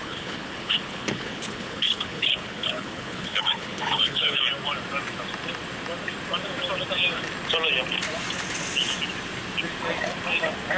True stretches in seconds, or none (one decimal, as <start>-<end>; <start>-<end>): 4.4-10.8